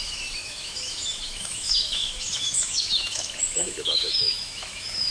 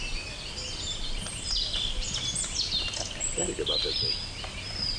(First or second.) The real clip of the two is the second